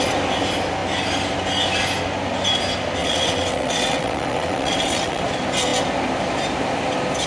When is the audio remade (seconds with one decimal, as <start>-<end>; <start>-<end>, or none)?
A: 3.0-5.2